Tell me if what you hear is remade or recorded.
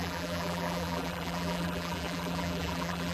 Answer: remade